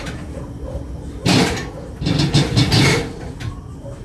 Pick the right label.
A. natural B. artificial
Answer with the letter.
A